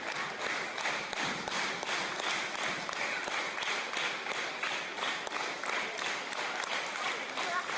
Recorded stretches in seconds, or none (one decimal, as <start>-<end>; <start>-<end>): 0.0-7.8

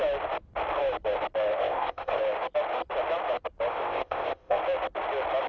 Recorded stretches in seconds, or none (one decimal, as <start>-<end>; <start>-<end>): 0.0-1.6; 2.2-3.7; 4.6-5.5

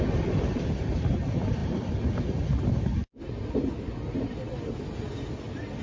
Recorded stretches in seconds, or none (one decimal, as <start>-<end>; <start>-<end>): 0.0-5.8

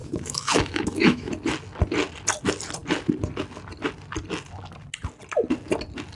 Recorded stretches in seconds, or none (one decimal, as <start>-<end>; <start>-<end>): 1.3-6.1

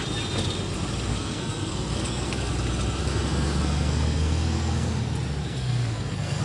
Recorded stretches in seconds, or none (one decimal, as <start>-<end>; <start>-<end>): 0.0-1.1; 2.5-3.0; 4.9-5.4

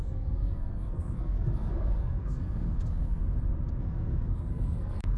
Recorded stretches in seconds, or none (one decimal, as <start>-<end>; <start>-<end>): 3.2-3.8

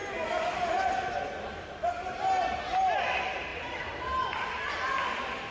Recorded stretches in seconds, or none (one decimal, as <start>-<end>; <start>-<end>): 0.0-5.5